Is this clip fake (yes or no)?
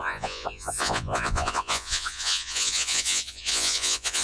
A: yes